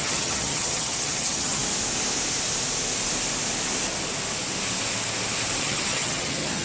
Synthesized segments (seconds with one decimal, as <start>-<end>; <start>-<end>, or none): 0.0-1.6; 5.6-6.6